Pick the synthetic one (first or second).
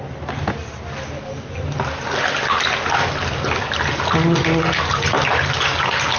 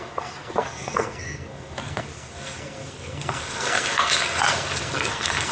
second